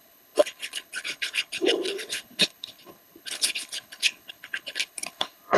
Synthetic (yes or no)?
yes